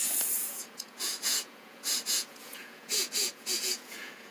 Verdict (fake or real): fake